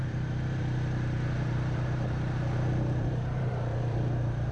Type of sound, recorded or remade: remade